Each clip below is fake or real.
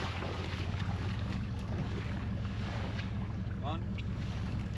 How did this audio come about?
fake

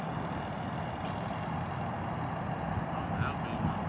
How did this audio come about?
real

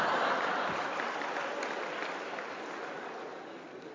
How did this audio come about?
real